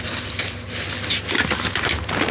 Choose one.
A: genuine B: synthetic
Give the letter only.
A